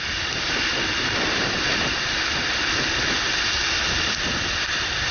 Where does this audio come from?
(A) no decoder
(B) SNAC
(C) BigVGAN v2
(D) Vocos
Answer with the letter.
A